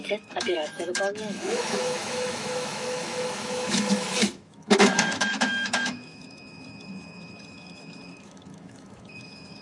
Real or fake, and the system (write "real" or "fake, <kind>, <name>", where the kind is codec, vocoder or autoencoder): fake, autoencoder, DAC-VAE